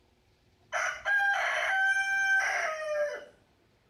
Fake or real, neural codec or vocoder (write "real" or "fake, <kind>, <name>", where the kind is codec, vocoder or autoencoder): real